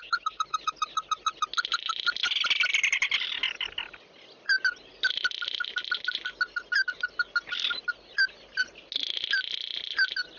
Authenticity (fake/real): real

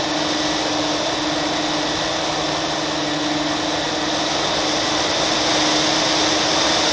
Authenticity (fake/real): real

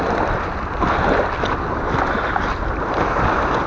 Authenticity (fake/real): real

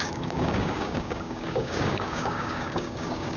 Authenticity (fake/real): fake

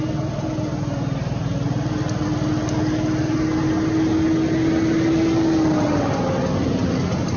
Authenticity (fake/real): real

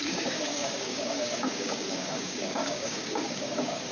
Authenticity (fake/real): fake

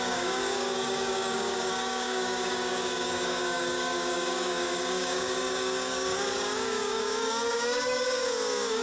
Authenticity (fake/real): fake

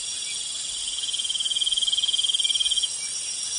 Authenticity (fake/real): real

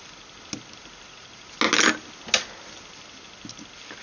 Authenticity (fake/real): real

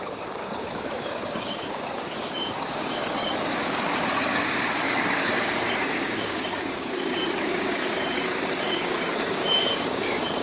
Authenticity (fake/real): fake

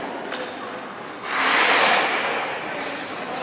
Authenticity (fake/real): real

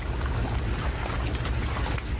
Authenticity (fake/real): real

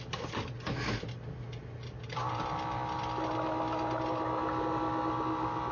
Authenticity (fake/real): real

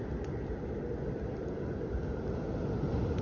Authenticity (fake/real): real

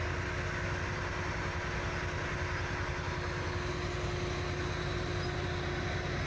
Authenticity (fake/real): real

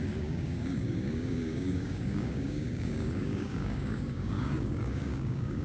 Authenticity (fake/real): fake